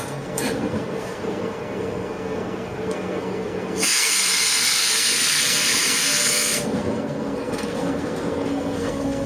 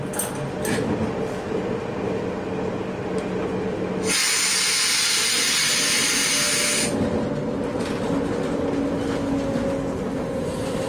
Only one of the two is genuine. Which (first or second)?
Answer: second